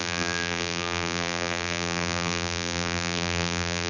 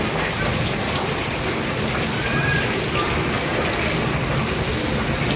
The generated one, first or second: first